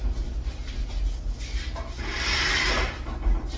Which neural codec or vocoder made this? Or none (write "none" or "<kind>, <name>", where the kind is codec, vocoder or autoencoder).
none